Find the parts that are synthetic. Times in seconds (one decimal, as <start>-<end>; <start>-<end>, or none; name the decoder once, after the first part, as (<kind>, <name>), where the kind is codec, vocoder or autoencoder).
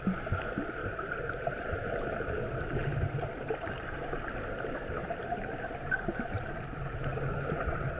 0.8-4.3 (vocoder, BigVGAN v2); 5.0-7.3